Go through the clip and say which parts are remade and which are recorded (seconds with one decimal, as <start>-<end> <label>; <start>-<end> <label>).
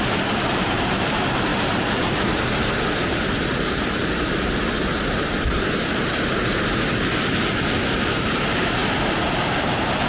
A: 0.0-6.4 remade; 6.4-8.0 recorded; 8.0-8.8 remade; 8.8-9.7 recorded; 9.7-10.1 remade